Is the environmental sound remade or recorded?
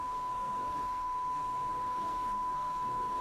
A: remade